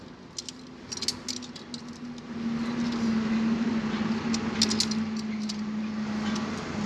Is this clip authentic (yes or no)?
yes